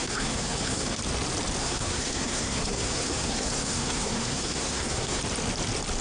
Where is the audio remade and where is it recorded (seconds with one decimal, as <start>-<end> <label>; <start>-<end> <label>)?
0.0-1.0 remade; 1.0-1.6 recorded; 1.6-5.2 remade; 5.2-6.0 recorded